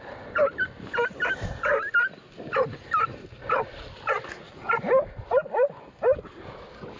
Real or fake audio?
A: real